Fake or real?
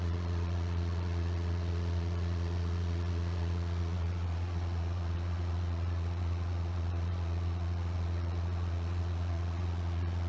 fake